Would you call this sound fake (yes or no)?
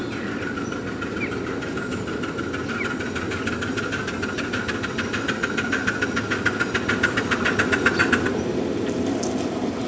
no